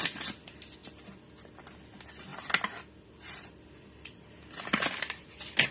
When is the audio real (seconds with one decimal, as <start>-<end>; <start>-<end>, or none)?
0.0-5.7